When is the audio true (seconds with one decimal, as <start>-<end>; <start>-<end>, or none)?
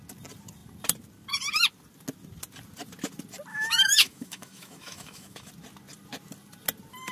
0.0-3.5; 5.5-7.1